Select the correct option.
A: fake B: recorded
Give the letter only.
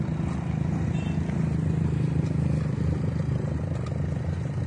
B